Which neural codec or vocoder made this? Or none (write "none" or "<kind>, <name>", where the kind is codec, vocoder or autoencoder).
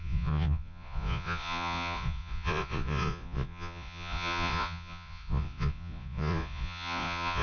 vocoder, Vocos